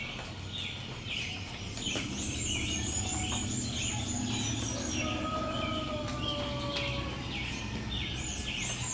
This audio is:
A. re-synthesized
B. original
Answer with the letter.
B